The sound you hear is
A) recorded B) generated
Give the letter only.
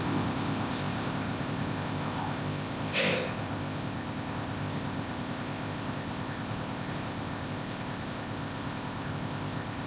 B